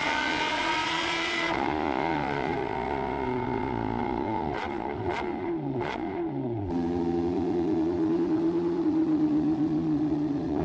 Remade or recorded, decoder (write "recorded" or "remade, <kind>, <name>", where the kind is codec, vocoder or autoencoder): remade, vocoder, Vocos